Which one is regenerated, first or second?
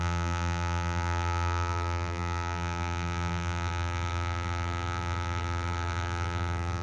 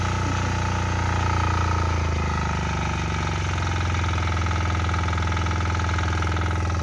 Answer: first